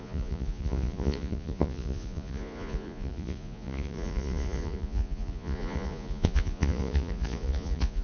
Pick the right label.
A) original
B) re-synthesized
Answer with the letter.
B